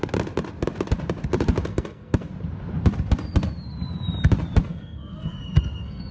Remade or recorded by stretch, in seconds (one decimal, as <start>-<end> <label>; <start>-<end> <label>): 0.0-1.7 recorded; 1.7-2.3 remade; 2.3-4.6 recorded; 4.6-6.1 remade